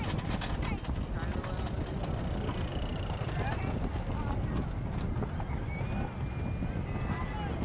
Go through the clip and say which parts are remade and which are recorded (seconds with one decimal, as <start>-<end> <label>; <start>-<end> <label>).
0.0-7.6 recorded